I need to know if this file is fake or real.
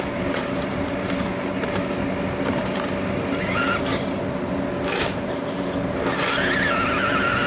real